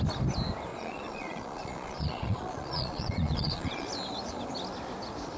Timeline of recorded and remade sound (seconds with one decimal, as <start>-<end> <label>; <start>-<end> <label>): 0.0-0.7 recorded; 0.7-3.9 remade; 3.9-5.4 recorded